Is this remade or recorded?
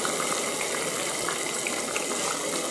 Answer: recorded